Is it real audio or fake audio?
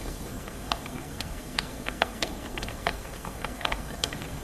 fake